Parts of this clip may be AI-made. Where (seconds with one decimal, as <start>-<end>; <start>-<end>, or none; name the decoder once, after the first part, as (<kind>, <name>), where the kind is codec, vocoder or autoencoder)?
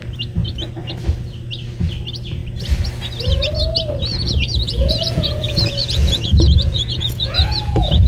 4.1-8.1 (vocoder, Vocos)